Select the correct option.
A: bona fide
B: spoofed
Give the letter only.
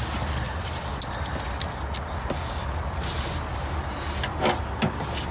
A